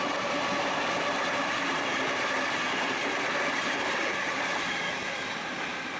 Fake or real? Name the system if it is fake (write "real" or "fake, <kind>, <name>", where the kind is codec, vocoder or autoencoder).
real